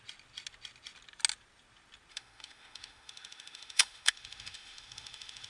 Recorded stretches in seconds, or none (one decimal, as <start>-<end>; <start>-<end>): 0.0-2.1